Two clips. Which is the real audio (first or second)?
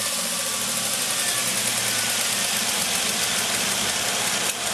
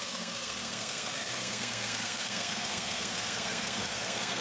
first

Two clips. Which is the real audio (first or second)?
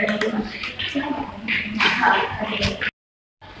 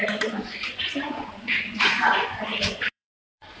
first